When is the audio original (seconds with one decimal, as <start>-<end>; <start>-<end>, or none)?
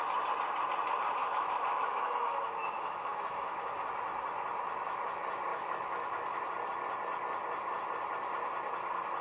0.0-1.2; 3.9-5.5; 6.4-9.2